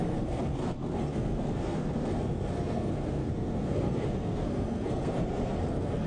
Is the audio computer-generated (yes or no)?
yes